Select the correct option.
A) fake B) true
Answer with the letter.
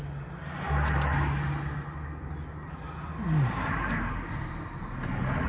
B